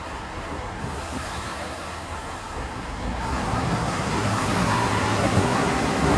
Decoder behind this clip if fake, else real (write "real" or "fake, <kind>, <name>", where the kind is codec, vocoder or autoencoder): fake, codec, SNAC